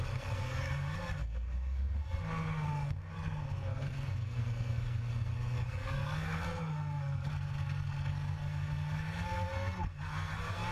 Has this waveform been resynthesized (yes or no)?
yes